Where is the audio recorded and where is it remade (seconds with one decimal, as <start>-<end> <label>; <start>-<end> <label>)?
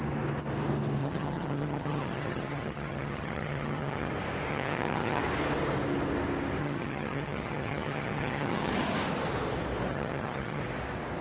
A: 0.0-1.0 recorded; 1.0-4.1 remade; 4.1-4.5 recorded; 4.5-5.2 remade; 5.2-6.6 recorded; 6.6-8.7 remade; 8.7-9.9 recorded; 9.9-10.6 remade; 10.6-11.2 recorded